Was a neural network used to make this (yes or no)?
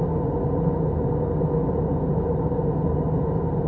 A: no